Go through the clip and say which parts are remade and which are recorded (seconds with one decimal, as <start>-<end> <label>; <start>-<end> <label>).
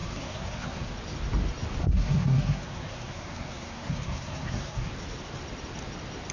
0.0-0.9 remade; 0.9-1.8 recorded; 1.8-4.9 remade; 4.9-6.3 recorded